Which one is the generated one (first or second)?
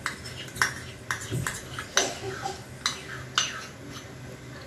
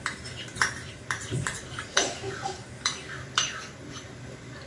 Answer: second